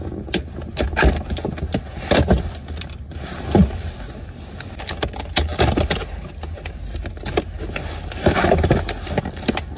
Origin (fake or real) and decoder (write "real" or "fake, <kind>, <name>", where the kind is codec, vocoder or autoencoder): real